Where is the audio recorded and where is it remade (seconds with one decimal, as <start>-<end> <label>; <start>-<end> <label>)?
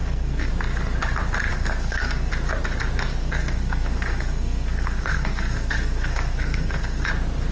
0.0-0.5 remade; 0.5-1.5 recorded; 1.5-2.3 remade; 2.3-3.1 recorded; 3.1-7.1 remade; 7.1-7.5 recorded